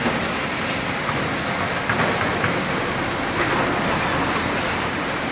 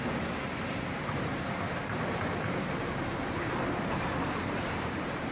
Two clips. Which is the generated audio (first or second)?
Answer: second